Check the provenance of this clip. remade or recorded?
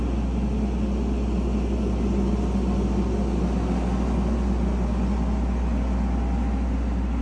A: recorded